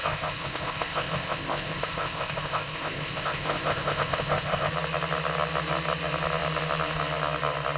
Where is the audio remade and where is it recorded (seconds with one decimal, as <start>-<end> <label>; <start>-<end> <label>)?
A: 0.0-4.7 remade; 4.7-7.8 recorded